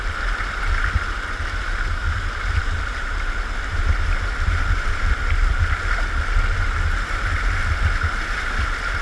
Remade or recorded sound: recorded